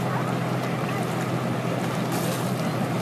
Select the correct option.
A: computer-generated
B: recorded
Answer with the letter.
B